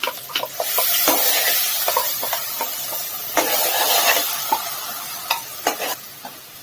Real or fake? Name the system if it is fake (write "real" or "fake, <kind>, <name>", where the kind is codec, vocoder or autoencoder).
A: real